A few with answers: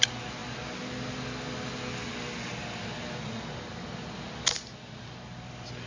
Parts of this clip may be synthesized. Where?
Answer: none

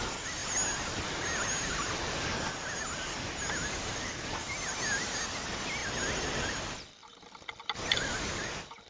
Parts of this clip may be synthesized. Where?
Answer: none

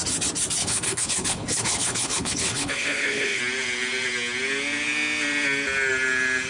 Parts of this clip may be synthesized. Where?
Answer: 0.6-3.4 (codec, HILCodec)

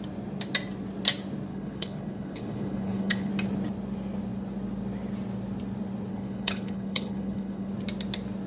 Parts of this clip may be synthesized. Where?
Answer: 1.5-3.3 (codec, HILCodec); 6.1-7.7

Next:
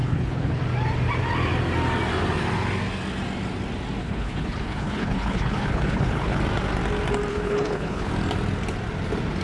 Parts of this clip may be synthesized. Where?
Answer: 0.0-0.6 (codec, HILCodec); 4.0-6.4; 7.3-8.1

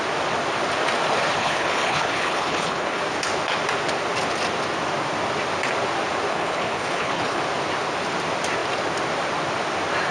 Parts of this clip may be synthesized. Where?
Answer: 1.4-3.0 (codec, HILCodec); 6.3-7.4

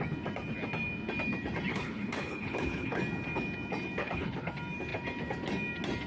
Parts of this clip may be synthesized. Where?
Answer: 1.7-3.0 (codec, HILCodec); 4.0-4.5

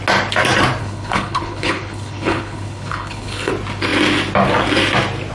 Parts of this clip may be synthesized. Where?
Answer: 0.8-3.5 (codec, HILCodec)